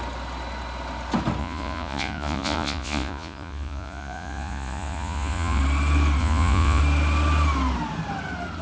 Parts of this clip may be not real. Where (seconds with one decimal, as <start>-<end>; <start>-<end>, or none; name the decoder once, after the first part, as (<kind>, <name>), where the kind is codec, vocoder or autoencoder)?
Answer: 1.4-5.6 (vocoder, Vocos); 6.2-6.8